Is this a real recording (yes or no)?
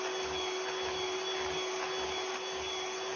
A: yes